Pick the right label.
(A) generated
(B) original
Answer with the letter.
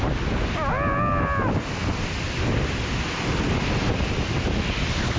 B